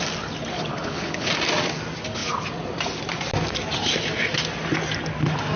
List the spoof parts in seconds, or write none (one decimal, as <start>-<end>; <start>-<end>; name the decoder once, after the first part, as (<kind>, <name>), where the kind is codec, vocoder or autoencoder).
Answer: 0.7-1.3 (codec, HILCodec)